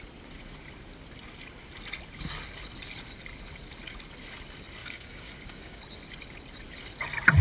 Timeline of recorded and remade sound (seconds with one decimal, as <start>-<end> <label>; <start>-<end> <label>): 0.0-4.8 recorded; 4.8-5.8 remade; 5.8-7.4 recorded